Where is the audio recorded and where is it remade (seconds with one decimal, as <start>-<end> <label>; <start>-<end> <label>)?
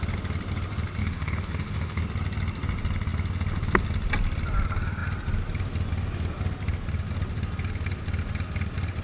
0.0-1.0 recorded; 1.0-2.0 remade; 2.0-9.0 recorded